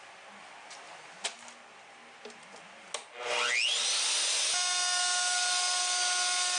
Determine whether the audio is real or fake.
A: real